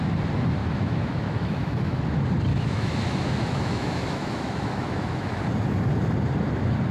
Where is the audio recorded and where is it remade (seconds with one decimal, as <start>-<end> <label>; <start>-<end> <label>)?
0.0-0.6 recorded; 0.6-2.0 remade; 2.0-2.5 recorded; 2.5-5.4 remade; 5.4-6.9 recorded